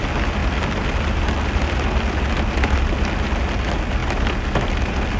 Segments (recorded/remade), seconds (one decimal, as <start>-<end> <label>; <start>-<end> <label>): 0.0-5.2 recorded